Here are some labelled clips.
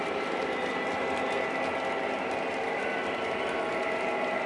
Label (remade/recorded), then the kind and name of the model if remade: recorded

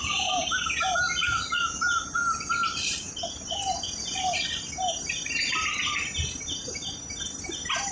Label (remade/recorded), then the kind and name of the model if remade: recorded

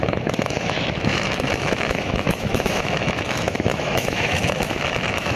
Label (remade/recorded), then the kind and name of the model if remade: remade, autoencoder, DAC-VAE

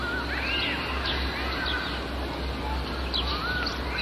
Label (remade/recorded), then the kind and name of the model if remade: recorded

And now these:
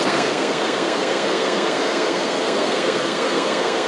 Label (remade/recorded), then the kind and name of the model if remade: remade, codec, SNAC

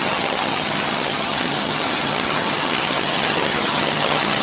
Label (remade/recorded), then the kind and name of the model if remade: remade, vocoder, HiFi-GAN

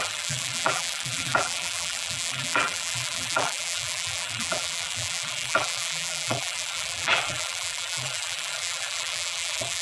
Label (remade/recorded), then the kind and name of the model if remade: remade, vocoder, BigVGAN v2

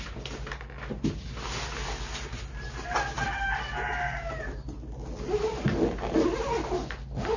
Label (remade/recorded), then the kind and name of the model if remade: recorded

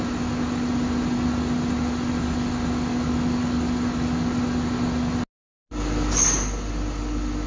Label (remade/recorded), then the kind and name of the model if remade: recorded